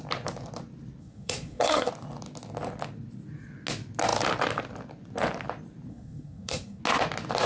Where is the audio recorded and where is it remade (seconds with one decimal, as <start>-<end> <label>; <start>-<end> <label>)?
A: 0.0-1.0 recorded; 1.0-1.9 remade; 1.9-5.9 recorded; 5.9-6.8 remade; 6.8-7.5 recorded